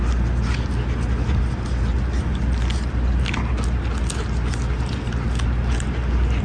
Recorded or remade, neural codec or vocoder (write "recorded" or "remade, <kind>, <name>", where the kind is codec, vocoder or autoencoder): recorded